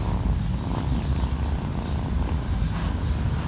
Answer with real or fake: real